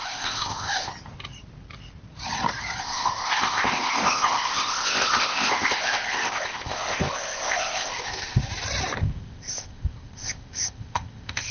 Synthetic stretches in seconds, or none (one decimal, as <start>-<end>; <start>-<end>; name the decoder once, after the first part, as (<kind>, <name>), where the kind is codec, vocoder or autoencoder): 0.0-0.9 (codec, ZipCodec); 2.8-8.4; 9.0-11.5